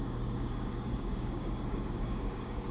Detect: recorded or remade remade